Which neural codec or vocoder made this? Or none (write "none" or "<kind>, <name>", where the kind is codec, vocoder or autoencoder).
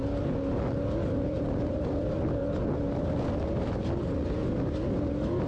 none